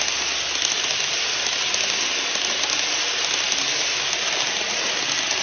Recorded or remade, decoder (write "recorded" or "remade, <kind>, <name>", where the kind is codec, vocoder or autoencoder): recorded